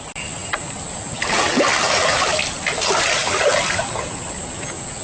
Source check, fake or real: real